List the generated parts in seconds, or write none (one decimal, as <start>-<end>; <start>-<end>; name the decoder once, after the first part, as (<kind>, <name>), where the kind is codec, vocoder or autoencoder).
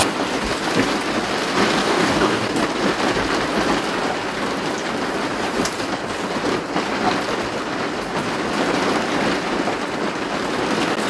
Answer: 1.8-2.5 (codec, DAC)